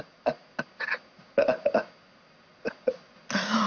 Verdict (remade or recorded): recorded